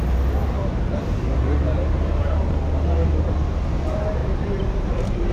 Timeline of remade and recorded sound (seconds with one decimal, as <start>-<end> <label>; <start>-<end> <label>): 0.0-4.2 recorded; 4.2-5.3 remade

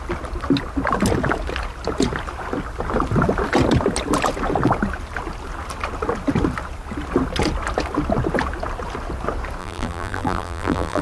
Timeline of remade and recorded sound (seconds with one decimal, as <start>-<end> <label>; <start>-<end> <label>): 0.0-9.6 recorded; 9.6-11.0 remade

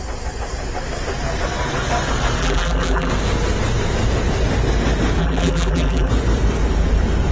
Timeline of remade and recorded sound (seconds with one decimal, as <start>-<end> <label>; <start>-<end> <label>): 0.0-2.4 recorded; 2.4-3.1 remade; 3.1-5.2 recorded; 5.2-6.1 remade; 6.1-7.3 recorded

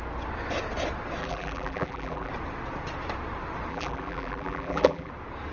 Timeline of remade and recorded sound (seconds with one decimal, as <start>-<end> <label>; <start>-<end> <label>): 0.0-1.2 recorded; 1.2-2.3 remade; 2.3-3.7 recorded; 3.7-5.1 remade; 5.1-5.5 recorded

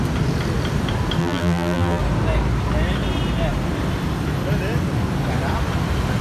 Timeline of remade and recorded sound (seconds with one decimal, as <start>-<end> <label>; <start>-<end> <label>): 0.0-1.2 recorded; 1.2-2.0 remade; 2.0-6.2 recorded

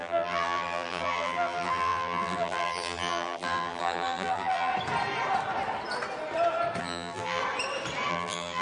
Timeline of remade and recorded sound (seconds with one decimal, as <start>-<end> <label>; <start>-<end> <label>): 0.0-4.7 remade; 4.7-6.8 recorded; 6.8-7.4 remade; 7.4-8.1 recorded; 8.1-8.6 remade

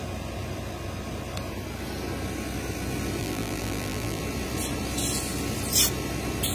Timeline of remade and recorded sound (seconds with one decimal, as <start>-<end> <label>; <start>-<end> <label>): 0.0-3.2 recorded; 3.2-4.2 remade; 4.2-6.5 recorded

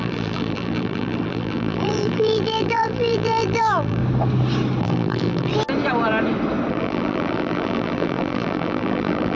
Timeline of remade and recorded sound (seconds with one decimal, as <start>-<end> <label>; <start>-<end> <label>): 0.0-4.0 remade; 4.0-4.8 recorded; 4.8-5.5 remade; 5.5-6.7 recorded; 6.7-9.3 remade